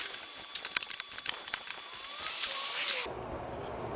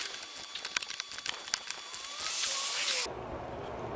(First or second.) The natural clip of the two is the second